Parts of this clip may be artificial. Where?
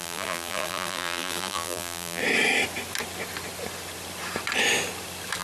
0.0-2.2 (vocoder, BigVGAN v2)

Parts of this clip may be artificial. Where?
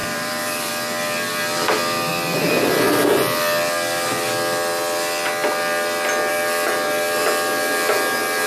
0.0-0.7 (vocoder, BigVGAN v2)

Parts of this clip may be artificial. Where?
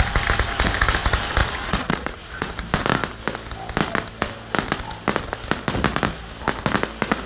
1.4-2.5 (vocoder, Vocos)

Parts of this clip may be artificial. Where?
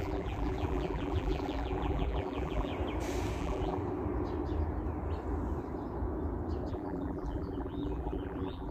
0.0-2.7 (vocoder, BigVGAN v2); 3.4-3.8; 6.7-8.7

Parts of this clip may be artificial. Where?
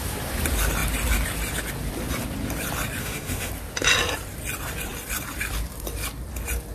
3.0-3.5 (autoencoder, DAC-VAE)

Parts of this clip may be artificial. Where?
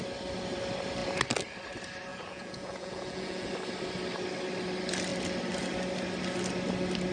2.1-3.5 (vocoder, Vocos)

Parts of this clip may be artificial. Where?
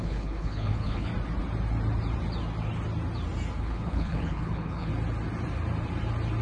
0.0-1.1 (codec, HILCodec); 3.6-4.9